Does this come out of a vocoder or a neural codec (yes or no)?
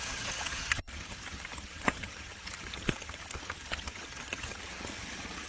yes